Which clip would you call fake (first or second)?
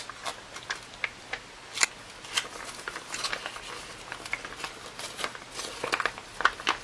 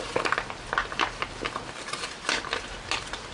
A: second